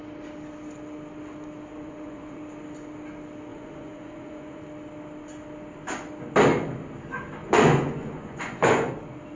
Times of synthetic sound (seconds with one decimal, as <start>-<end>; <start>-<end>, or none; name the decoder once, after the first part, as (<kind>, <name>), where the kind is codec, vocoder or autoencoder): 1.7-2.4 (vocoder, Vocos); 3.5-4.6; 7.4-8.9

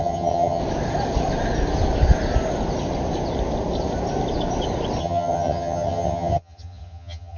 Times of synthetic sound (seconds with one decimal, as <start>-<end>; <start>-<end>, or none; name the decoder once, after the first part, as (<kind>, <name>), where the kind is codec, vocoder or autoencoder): 0.0-0.6 (vocoder, HiFi-GAN); 5.0-7.4

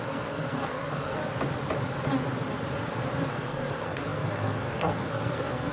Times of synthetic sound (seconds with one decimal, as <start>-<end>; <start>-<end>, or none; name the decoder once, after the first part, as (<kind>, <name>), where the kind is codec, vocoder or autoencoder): 0.0-1.2 (codec, SNAC); 3.3-5.7